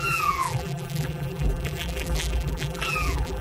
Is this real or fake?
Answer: fake